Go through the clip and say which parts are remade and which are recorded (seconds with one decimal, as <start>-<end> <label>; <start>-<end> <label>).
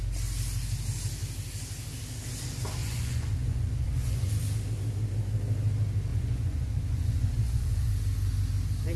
0.0-2.8 recorded; 2.8-4.3 remade; 4.3-6.1 recorded; 6.1-7.9 remade; 7.9-9.0 recorded